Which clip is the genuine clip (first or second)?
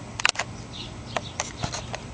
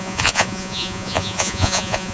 first